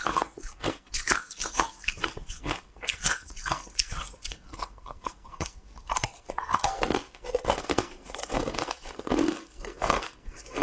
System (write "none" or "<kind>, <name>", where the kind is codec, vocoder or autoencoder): codec, SNAC